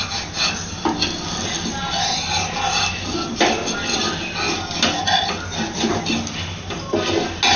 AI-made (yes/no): no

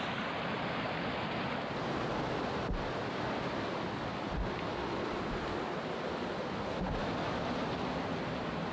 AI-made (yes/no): no